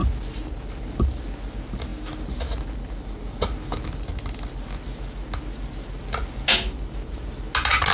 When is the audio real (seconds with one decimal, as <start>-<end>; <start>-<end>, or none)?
0.0-7.9